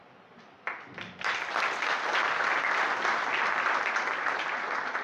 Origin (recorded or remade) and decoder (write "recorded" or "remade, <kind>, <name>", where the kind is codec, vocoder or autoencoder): recorded